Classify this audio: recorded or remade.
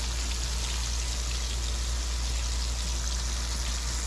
recorded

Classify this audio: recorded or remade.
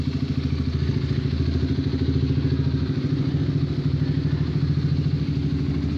recorded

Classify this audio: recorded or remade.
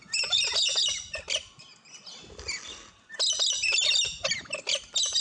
recorded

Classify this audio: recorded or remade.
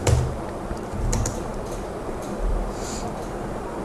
remade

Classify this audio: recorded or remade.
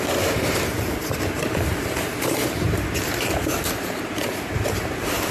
remade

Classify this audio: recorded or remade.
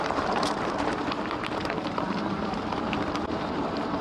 remade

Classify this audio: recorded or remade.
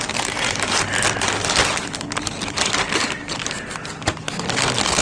recorded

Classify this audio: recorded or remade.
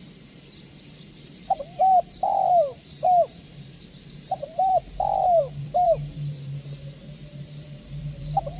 remade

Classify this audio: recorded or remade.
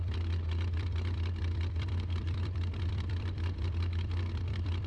remade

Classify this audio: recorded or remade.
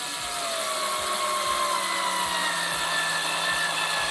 recorded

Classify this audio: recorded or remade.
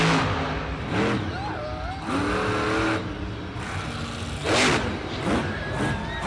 recorded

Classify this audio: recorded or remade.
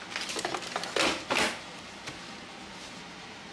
recorded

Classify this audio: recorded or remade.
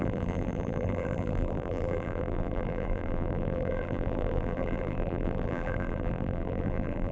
remade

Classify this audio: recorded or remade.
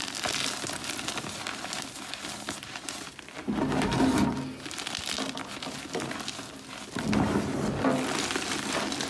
recorded